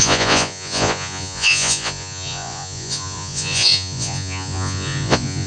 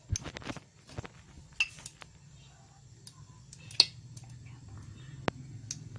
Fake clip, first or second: first